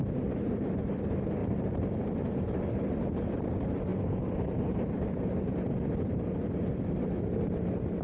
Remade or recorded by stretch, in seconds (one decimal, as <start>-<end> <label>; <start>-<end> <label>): 0.0-0.8 remade; 0.8-1.4 recorded; 1.4-3.1 remade; 3.1-3.9 recorded; 3.9-5.6 remade; 5.6-8.0 recorded